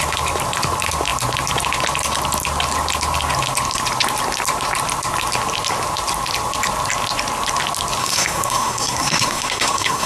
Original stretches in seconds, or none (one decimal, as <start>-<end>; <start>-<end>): 0.0-8.0